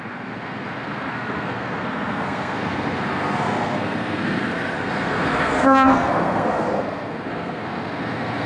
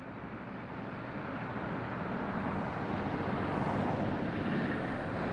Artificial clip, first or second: first